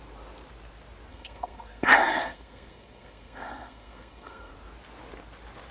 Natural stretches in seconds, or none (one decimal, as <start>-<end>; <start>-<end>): 0.0-1.1; 4.5-5.7